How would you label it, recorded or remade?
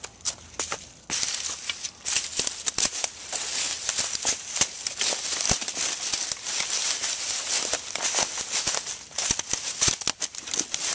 recorded